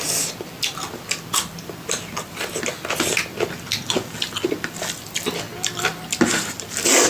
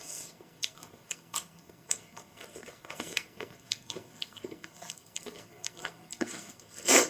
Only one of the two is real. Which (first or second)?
first